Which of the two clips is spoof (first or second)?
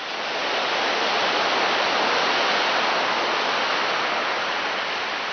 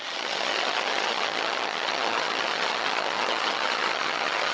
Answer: second